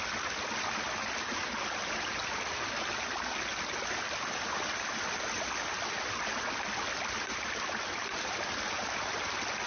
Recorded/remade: recorded